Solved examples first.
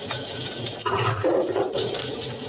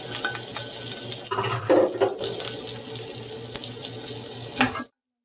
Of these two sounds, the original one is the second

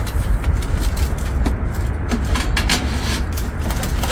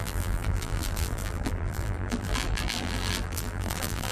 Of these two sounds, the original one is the first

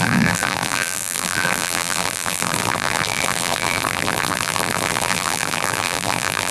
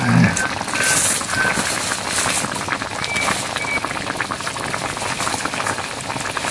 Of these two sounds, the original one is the second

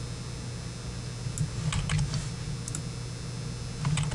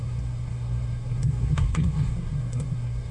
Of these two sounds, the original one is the first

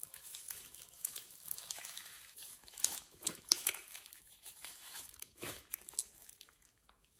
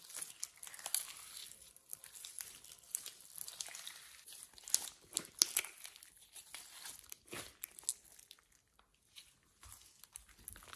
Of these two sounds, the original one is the second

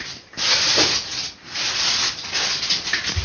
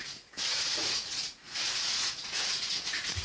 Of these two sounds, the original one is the first